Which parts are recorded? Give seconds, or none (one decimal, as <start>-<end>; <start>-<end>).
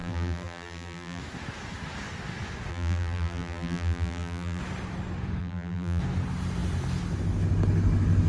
1.2-2.7; 4.6-5.4; 6.0-8.3